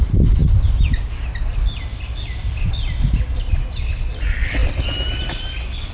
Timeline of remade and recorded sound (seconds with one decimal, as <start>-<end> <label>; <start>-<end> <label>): 0.0-5.9 recorded